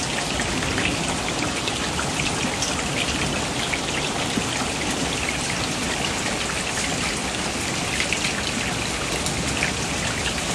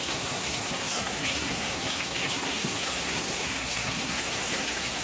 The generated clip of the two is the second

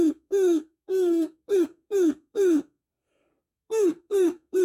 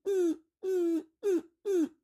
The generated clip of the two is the first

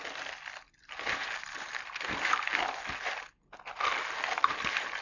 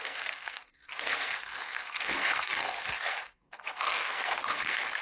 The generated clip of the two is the second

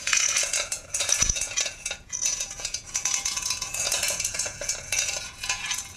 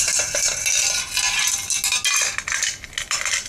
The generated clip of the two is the first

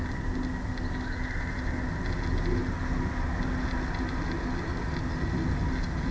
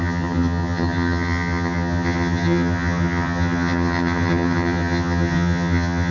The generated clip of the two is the second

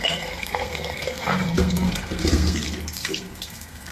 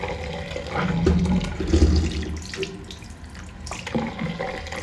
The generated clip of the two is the first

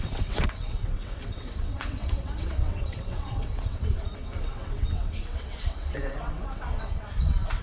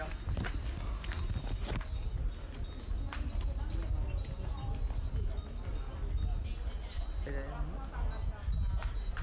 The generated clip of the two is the first